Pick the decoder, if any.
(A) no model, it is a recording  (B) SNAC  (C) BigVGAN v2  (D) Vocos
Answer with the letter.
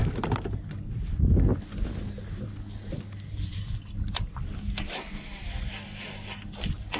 A